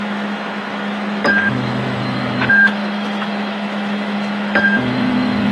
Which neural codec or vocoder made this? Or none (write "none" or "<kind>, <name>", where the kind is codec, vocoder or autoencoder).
autoencoder, DAC-VAE